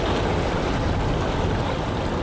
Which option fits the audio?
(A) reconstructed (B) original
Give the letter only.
B